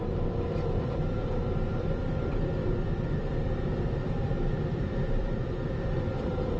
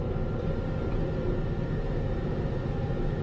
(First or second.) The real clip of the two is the second